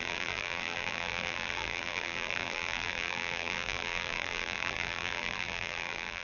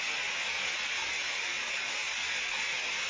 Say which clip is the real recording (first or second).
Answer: second